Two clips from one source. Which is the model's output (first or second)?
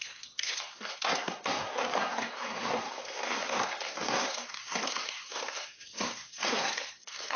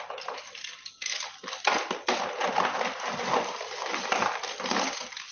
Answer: first